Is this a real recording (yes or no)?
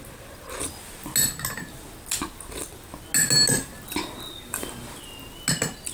yes